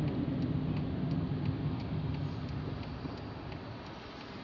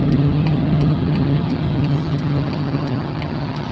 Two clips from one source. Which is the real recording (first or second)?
first